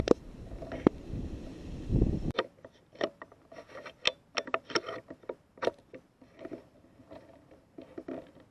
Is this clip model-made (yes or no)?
no